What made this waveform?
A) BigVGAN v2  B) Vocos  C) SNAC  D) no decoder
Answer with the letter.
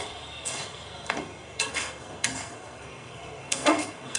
C